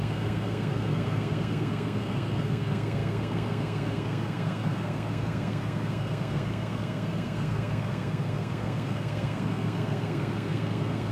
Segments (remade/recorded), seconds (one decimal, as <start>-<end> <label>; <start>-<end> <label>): 0.0-11.1 remade